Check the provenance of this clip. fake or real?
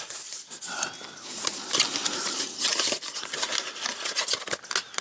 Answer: real